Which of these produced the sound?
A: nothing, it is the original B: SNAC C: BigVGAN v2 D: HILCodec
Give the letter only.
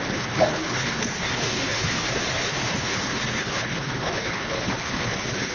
D